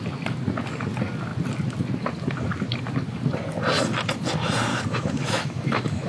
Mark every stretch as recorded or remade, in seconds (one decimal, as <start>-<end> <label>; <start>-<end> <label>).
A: 0.0-4.7 recorded; 4.7-6.1 remade